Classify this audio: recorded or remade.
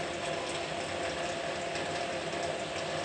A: recorded